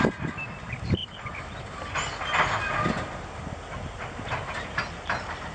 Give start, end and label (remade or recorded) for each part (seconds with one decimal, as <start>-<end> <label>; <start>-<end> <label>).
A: 0.0-5.5 recorded